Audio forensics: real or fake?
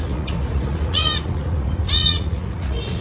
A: fake